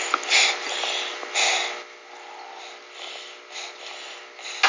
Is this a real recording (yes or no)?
yes